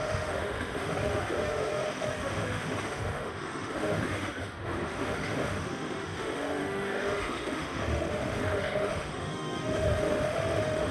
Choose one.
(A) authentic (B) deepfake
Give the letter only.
B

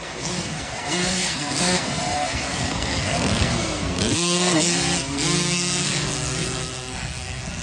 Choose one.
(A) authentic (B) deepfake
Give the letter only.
B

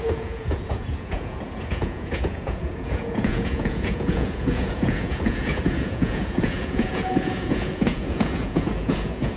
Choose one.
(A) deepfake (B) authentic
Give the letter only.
A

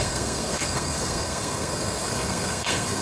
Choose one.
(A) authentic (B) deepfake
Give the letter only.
B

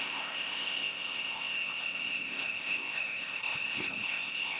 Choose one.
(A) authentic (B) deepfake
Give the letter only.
B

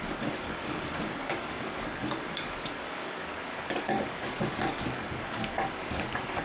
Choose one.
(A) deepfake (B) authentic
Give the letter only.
A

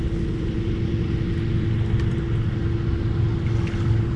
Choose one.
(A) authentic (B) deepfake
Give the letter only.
A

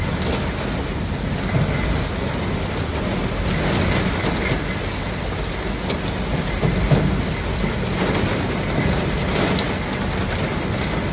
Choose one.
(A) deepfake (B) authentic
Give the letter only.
B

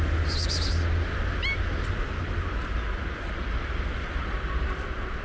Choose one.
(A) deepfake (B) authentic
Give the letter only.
B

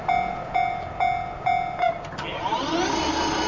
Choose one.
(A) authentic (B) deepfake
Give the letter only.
A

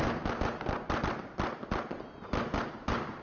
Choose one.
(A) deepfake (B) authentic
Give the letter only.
B